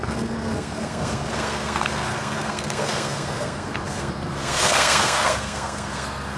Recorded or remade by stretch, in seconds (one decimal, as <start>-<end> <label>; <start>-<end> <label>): 0.0-6.4 remade